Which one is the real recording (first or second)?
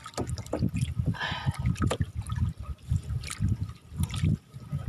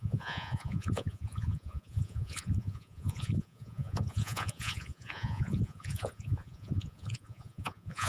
first